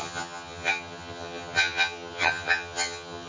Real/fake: fake